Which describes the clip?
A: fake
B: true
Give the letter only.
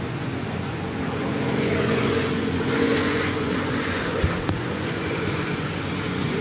A